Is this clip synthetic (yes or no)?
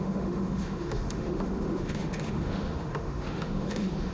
yes